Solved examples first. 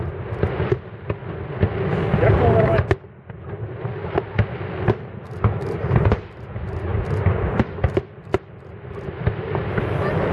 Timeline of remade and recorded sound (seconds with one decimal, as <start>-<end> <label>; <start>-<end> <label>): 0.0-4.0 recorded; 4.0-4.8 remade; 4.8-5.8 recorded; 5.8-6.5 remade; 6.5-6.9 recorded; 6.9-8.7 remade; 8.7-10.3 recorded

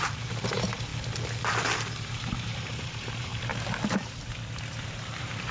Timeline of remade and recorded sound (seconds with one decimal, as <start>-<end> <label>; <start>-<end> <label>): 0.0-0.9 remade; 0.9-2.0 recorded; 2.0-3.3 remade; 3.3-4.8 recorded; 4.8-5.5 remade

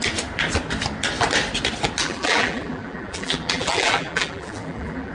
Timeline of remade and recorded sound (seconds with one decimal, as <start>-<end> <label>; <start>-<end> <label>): 0.0-2.0 recorded; 2.0-5.1 remade

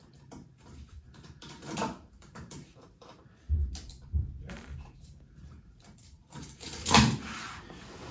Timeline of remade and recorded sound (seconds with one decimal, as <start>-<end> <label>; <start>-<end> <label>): 0.0-3.6 remade; 3.6-4.4 recorded; 4.4-8.1 remade